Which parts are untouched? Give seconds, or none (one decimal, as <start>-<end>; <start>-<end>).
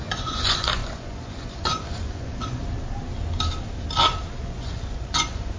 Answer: 2.6-4.4